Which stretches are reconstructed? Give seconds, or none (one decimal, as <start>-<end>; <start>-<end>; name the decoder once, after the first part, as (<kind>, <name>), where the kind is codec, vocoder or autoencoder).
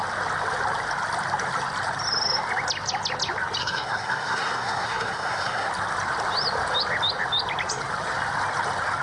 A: 3.6-5.7 (codec, SNAC)